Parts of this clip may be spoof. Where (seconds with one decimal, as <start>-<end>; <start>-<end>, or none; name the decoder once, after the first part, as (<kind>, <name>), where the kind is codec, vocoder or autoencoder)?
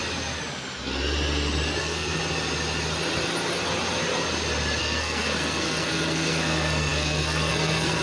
1.8-2.2 (codec, SNAC); 4.8-8.0